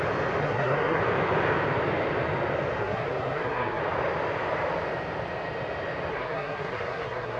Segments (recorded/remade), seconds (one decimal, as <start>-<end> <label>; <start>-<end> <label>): 0.0-0.4 recorded; 0.4-1.0 remade; 1.0-2.8 recorded; 2.8-3.8 remade; 3.8-6.1 recorded; 6.1-7.4 remade